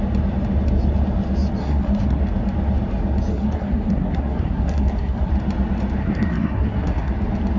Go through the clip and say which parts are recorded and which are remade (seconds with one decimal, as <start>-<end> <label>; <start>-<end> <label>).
0.0-1.6 recorded; 1.6-2.2 remade; 2.2-3.3 recorded; 3.3-5.3 remade; 5.3-6.0 recorded; 6.0-7.1 remade; 7.1-7.6 recorded